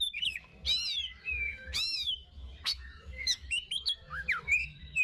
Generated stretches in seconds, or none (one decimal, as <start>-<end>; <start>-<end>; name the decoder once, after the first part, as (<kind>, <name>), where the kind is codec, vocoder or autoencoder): 0.0-0.5 (autoencoder, DAC-VAE); 1.1-5.0